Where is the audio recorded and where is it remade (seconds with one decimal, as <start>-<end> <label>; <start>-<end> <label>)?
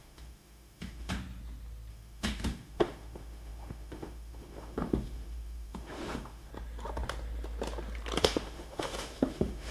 0.0-1.2 remade; 1.2-1.9 recorded; 1.9-6.5 remade; 6.5-8.2 recorded; 8.2-9.7 remade